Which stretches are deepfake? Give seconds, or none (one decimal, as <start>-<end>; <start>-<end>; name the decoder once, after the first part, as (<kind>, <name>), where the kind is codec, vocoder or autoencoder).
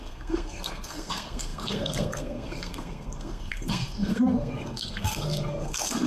0.0-6.1 (codec, SNAC)